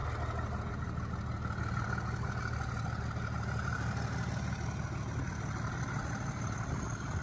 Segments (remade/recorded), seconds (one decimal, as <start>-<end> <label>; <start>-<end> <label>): 0.0-7.2 recorded